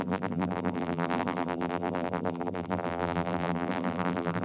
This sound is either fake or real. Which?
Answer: fake